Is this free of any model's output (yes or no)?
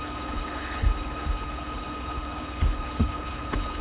no